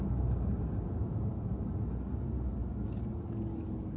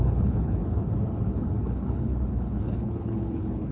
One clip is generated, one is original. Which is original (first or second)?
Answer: first